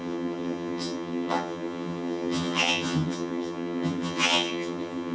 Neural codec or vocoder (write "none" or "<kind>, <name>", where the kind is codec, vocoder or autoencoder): vocoder, HiFi-GAN